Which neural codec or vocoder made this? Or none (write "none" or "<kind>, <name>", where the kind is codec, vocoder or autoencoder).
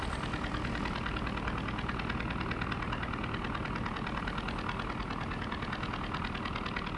none